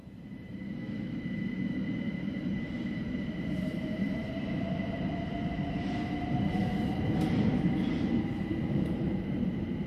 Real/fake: fake